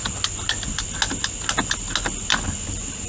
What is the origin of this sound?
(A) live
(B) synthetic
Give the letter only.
A